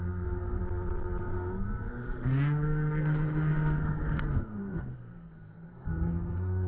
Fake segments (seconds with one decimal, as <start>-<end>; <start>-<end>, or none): 0.0-0.6; 1.2-6.7